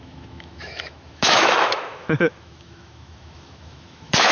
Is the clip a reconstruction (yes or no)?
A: yes